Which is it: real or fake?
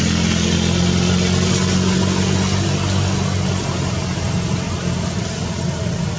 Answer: real